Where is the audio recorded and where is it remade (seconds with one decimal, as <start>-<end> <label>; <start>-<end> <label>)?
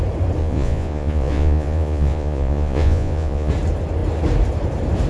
0.0-0.4 recorded; 0.4-3.5 remade; 3.5-5.1 recorded